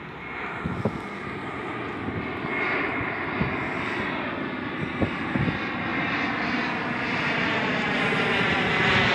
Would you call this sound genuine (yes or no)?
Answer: yes